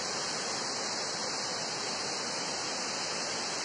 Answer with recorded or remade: recorded